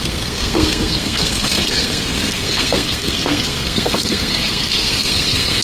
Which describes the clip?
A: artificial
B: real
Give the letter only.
A